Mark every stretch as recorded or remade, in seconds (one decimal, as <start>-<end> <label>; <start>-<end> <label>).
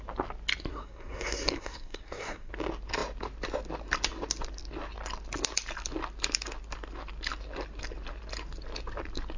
0.0-0.7 recorded; 0.7-2.5 remade; 2.5-9.4 recorded